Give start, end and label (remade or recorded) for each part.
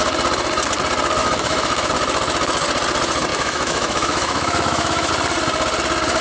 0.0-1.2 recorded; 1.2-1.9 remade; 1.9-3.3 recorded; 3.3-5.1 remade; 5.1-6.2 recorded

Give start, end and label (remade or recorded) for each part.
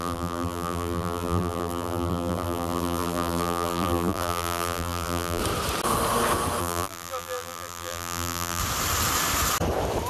0.0-5.4 remade; 5.4-6.6 recorded; 6.6-8.6 remade; 8.6-10.1 recorded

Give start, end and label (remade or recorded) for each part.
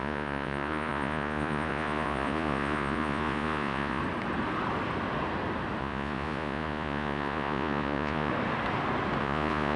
0.0-4.0 remade; 4.0-5.8 recorded; 5.8-8.3 remade; 8.3-9.2 recorded; 9.2-9.8 remade